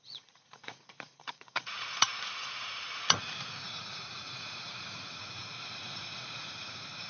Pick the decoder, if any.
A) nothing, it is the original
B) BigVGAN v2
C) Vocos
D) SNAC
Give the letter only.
C